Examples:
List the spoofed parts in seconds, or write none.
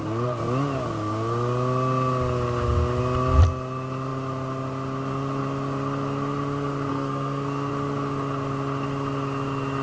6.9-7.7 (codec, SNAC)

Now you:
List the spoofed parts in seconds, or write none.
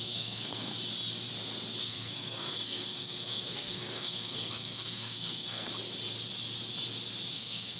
0.0-0.7 (codec, SNAC); 1.8-5.7; 7.3-7.8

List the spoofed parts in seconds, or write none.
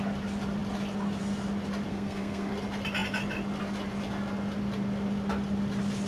1.9-2.5 (codec, SNAC)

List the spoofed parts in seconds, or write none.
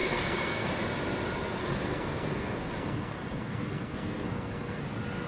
0.0-0.7 (codec, SNAC); 1.6-4.8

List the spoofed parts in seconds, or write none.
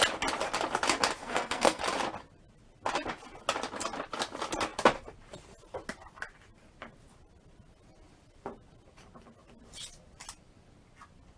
1.2-1.8 (codec, SNAC)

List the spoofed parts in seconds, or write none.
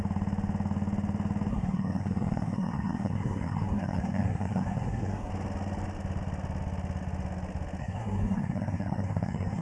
1.5-5.3 (codec, SNAC); 7.8-9.6